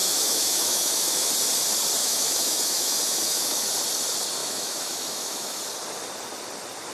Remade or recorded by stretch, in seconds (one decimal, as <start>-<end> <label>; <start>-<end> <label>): 0.0-1.3 remade; 1.3-2.0 recorded; 2.0-3.7 remade; 3.7-4.4 recorded; 4.4-5.6 remade; 5.6-6.9 recorded

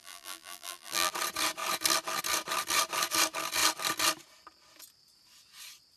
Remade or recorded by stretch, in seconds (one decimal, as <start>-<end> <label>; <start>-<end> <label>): 0.0-1.1 remade; 1.1-6.0 recorded

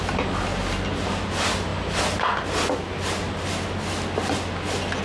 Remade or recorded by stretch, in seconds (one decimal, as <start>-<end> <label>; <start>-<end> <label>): 0.0-5.0 recorded

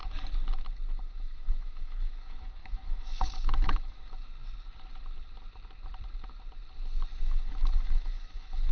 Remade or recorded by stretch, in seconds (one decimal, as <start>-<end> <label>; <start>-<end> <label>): 0.0-1.0 recorded; 1.0-4.2 remade; 4.2-7.2 recorded; 7.2-8.7 remade

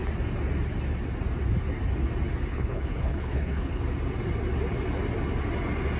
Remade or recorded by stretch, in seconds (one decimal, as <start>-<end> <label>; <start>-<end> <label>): 0.0-2.5 recorded; 2.5-3.8 remade; 3.8-6.0 recorded

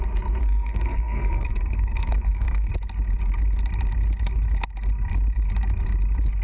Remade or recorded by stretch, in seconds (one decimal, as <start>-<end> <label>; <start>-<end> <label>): 0.0-0.4 recorded; 0.4-2.7 remade; 2.7-6.4 recorded

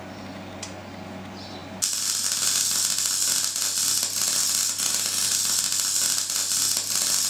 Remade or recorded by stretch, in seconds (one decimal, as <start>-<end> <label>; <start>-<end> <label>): 0.0-7.3 recorded